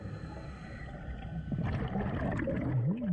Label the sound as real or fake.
real